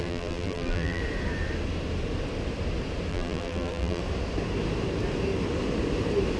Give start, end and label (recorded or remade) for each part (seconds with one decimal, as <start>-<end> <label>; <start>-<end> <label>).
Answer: 0.0-1.0 remade; 1.0-3.1 recorded; 3.1-4.0 remade; 4.0-6.4 recorded